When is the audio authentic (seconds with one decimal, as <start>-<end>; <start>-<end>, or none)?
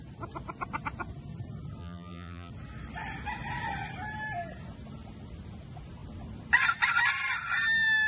0.0-1.8; 2.5-8.1